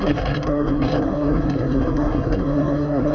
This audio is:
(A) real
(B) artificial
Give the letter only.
B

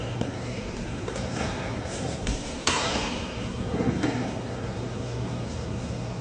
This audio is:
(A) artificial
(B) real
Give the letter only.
A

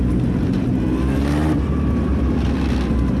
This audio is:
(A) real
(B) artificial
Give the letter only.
A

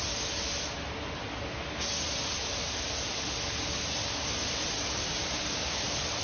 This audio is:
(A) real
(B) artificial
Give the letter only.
A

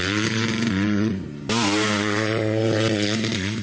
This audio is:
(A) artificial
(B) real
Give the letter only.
A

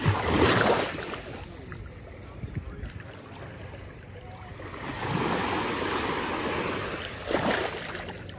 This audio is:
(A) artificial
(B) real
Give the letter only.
B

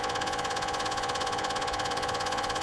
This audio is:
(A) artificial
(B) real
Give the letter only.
A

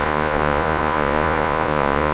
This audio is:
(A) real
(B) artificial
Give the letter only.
B